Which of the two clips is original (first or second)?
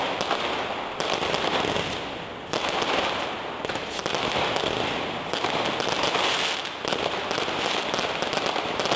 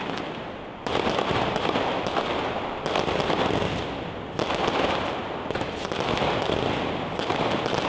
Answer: first